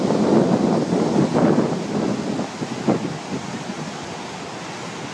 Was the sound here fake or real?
real